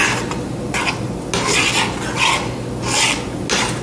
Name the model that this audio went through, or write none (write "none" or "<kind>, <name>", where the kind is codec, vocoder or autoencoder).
none